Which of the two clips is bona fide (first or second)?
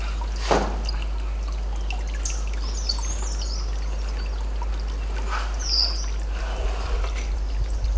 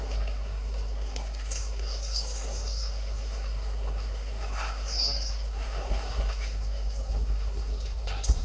first